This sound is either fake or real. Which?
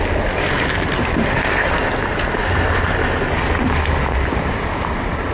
real